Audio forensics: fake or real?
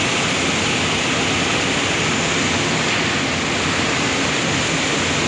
real